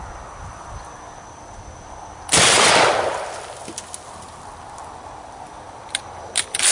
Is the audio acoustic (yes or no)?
yes